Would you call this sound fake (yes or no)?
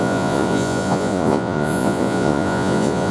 yes